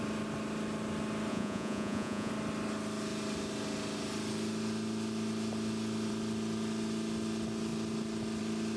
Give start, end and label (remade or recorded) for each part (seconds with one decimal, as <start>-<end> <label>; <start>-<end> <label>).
0.0-1.3 recorded; 1.3-2.3 remade; 2.3-8.8 recorded